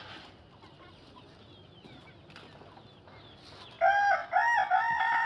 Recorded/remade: recorded